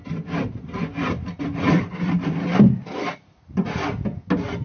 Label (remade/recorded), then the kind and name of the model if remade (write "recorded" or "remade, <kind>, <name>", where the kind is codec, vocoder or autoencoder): recorded